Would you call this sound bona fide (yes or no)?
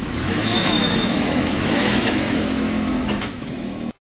no